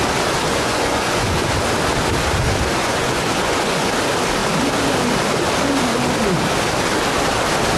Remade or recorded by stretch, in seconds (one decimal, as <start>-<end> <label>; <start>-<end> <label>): 0.0-0.5 recorded; 0.5-1.5 remade; 1.5-2.8 recorded; 2.8-3.9 remade; 3.9-7.8 recorded